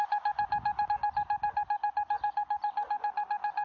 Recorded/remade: recorded